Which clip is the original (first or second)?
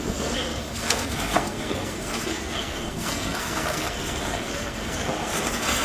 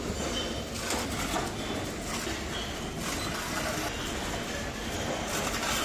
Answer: second